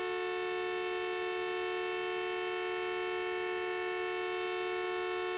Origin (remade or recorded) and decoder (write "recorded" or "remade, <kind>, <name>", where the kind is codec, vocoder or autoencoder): recorded